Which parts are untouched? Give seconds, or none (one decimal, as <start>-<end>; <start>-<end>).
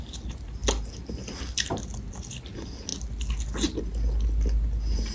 0.0-5.1